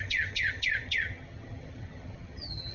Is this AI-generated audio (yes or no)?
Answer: yes